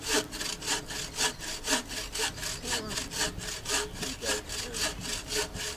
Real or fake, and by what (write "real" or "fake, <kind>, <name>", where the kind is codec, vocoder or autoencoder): real